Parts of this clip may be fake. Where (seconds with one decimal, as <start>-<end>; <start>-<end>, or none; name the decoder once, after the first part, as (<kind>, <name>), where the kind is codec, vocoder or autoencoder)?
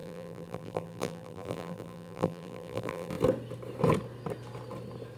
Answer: 0.0-3.1 (vocoder, BigVGAN v2)